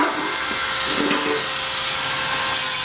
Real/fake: real